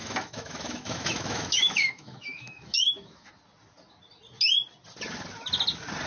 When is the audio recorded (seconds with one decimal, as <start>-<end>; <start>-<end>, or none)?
3.3-6.1